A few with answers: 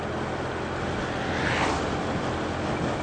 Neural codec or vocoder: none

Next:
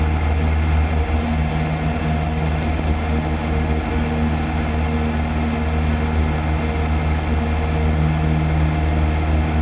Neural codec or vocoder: none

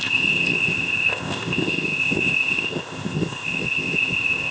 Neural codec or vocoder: codec, ZipCodec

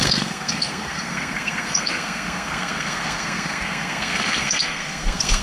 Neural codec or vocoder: codec, SNAC